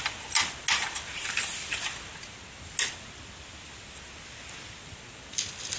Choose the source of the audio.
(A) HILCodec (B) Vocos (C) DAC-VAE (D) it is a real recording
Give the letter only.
D